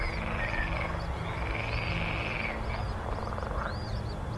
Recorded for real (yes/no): yes